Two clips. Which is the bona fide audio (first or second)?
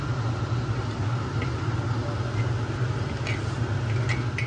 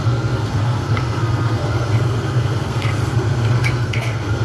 first